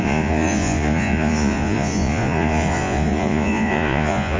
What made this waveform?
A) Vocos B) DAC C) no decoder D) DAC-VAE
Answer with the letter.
A